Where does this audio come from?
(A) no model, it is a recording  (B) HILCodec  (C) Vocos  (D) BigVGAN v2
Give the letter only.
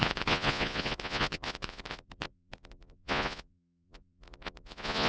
C